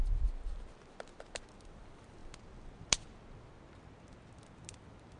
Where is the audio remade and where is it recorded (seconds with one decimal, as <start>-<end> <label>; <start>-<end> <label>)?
0.0-5.2 recorded